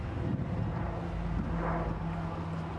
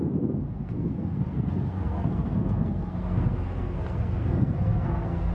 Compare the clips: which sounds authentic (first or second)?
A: first